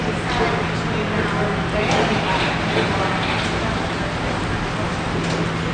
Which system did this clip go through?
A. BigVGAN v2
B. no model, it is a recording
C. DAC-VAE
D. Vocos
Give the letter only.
B